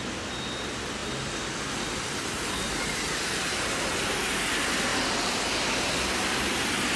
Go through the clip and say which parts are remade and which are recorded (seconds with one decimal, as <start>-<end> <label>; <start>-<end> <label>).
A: 0.0-7.0 recorded